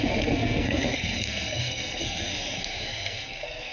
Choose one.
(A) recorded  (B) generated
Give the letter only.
B